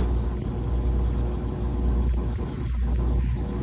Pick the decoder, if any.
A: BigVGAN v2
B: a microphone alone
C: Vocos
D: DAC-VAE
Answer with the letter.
B